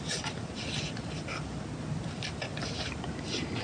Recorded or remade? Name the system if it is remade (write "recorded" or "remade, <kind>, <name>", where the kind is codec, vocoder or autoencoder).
recorded